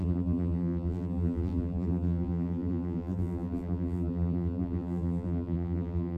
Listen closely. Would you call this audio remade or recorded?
remade